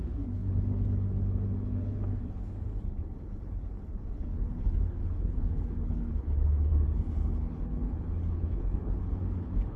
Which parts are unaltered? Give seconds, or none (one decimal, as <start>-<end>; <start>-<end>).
none